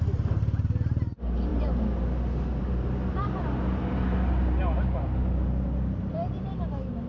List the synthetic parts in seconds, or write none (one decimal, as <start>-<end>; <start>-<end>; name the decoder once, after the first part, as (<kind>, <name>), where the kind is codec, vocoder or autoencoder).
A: none

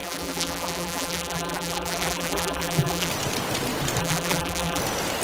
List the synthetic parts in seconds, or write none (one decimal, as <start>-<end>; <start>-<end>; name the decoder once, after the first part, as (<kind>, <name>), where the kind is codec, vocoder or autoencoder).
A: 0.0-3.1 (vocoder, BigVGAN v2); 4.0-4.8